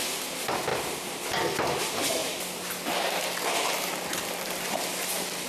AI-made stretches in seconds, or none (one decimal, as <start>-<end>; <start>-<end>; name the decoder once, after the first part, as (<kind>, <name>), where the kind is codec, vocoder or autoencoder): none